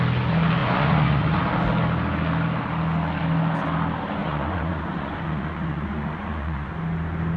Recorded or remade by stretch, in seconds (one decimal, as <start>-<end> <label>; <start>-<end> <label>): 0.0-0.6 recorded; 0.6-1.4 remade; 1.4-4.2 recorded; 4.2-6.7 remade; 6.7-7.4 recorded